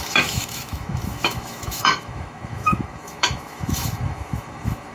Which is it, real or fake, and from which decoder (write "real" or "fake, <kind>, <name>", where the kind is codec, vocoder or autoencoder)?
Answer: fake, autoencoder, DAC-VAE